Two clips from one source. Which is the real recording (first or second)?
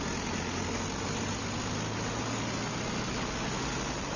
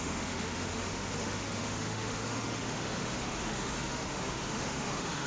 first